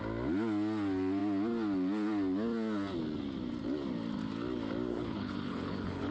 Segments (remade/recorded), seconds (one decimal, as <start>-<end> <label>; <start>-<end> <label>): 0.0-4.9 recorded; 4.9-6.1 remade